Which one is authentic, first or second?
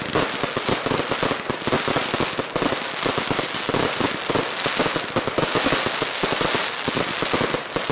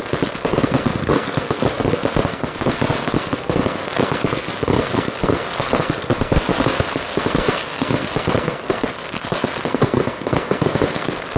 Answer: first